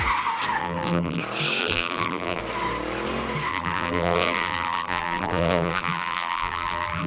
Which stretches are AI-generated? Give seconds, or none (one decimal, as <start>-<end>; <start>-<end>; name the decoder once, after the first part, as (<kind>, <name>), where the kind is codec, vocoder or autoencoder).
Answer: 0.6-1.2 (vocoder, BigVGAN v2); 1.6-2.4; 3.5-7.1